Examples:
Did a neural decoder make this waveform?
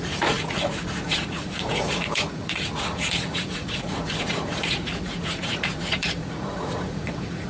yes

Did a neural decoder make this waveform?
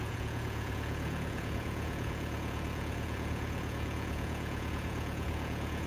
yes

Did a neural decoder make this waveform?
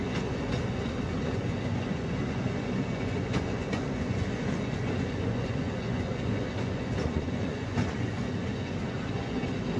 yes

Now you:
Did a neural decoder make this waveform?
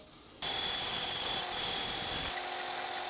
no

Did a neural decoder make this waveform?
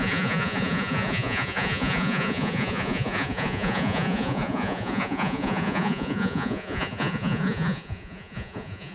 yes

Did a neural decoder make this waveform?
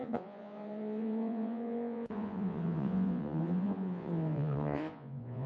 yes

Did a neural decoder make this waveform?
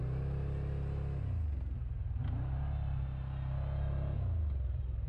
no